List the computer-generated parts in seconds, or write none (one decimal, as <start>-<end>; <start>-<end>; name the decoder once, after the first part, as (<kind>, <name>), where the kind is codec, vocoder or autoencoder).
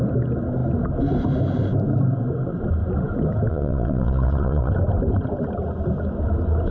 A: 3.5-4.7 (vocoder, Vocos)